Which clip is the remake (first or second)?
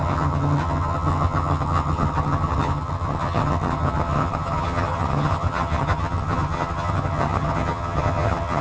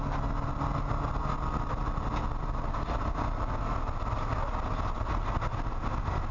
first